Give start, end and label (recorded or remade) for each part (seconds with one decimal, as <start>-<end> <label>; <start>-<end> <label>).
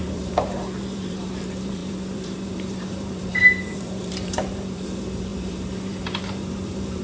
0.0-7.0 remade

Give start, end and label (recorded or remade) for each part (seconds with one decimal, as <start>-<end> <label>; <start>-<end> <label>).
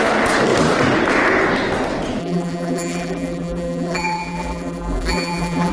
0.0-2.2 recorded; 2.2-5.7 remade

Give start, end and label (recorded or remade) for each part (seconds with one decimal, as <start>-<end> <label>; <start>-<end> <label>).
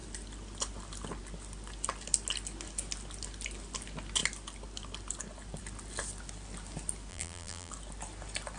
0.0-7.1 recorded; 7.1-7.7 remade; 7.7-8.6 recorded